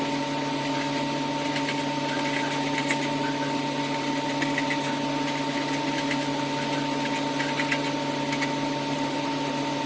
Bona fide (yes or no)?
yes